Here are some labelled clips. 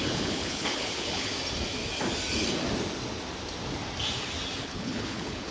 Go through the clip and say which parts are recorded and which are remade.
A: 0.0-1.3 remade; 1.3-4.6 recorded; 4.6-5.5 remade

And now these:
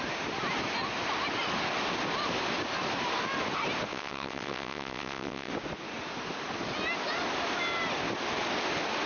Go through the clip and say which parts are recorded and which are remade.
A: 0.0-3.9 recorded; 3.9-5.5 remade; 5.5-9.1 recorded